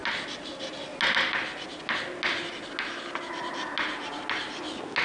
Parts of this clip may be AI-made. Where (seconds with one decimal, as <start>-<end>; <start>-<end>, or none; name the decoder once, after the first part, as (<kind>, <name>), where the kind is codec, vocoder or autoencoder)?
none